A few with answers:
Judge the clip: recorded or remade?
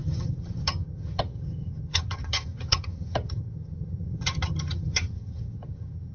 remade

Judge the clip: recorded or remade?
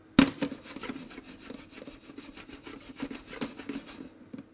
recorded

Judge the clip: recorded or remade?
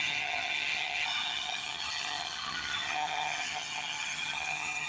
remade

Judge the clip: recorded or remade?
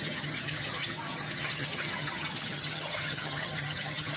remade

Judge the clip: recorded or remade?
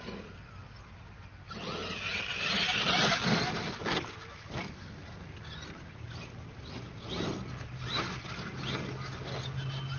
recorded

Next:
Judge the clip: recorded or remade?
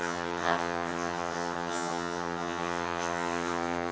remade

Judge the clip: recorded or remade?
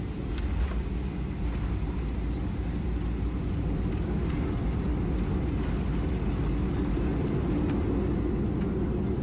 recorded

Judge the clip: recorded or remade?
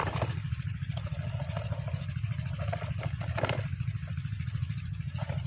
recorded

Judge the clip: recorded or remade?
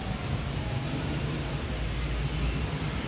recorded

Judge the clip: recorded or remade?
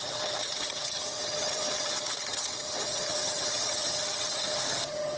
remade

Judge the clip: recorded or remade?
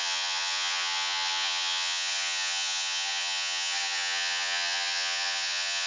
remade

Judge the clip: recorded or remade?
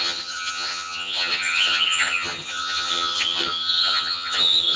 remade